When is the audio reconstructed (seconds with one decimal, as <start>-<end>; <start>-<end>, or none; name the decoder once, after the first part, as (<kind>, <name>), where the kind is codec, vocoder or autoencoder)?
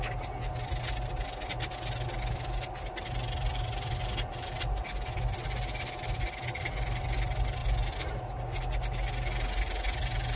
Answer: none